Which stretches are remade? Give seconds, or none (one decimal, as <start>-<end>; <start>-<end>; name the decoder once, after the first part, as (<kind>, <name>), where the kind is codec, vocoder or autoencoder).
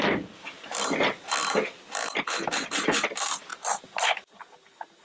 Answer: none